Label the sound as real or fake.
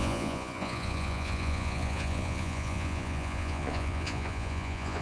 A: fake